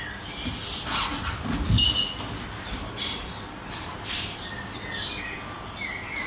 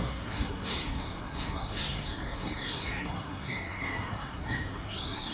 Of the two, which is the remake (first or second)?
second